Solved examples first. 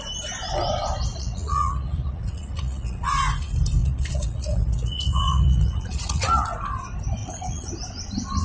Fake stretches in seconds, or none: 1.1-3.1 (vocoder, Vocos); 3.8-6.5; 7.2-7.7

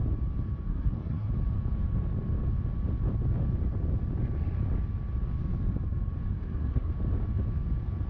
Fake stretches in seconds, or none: 0.7-1.3 (codec, SNAC); 6.3-6.9

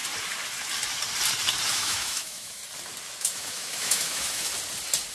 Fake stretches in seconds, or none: 1.7-2.6 (autoencoder, DAC-VAE); 3.2-4.5

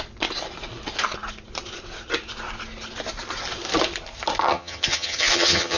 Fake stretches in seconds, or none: 4.4-5.8 (vocoder, HiFi-GAN)

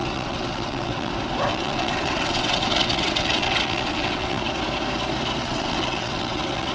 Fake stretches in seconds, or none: 0.0-1.1 (vocoder, WaveNeXt); 1.5-4.4; 5.4-6.7

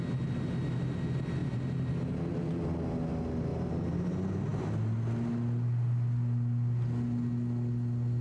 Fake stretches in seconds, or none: 1.4-1.9 (vocoder, BigVGAN v2); 3.5-4.1

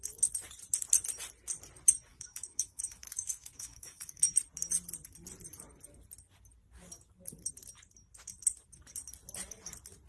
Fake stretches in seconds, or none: 2.1-4.3 (autoencoder, DAC-VAE)